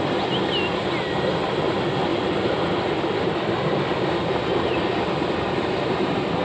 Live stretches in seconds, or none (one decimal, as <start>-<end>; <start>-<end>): 0.0-6.4